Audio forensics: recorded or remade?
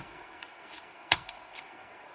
remade